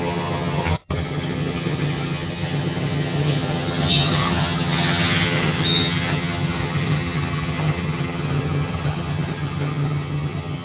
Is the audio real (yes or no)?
no